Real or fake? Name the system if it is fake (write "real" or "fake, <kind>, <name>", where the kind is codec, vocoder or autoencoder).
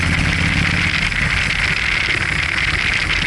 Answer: real